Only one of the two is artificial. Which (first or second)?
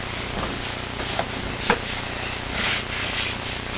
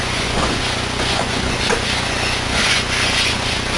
second